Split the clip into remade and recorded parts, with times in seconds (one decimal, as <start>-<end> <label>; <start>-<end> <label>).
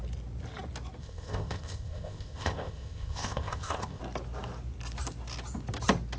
0.0-1.0 recorded; 1.0-4.0 remade; 4.0-6.2 recorded